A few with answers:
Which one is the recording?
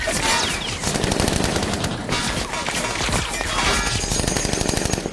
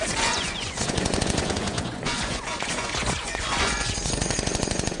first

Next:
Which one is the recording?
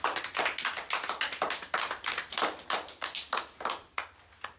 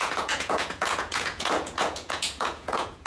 first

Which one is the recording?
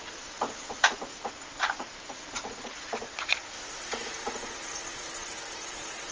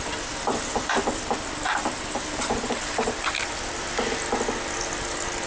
second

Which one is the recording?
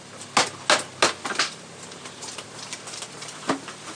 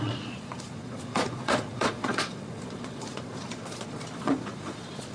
first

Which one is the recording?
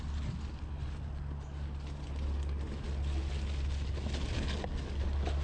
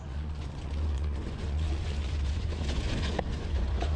first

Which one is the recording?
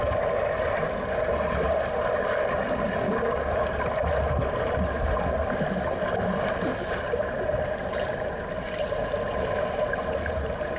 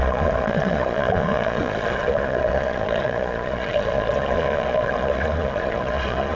first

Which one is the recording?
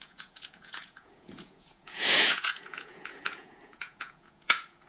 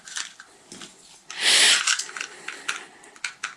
second